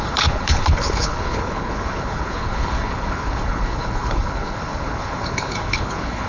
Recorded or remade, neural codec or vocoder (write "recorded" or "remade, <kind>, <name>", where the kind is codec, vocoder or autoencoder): remade, codec, HILCodec